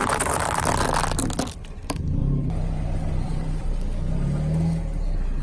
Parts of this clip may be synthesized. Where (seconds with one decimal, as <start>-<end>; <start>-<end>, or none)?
0.0-0.6; 2.2-3.7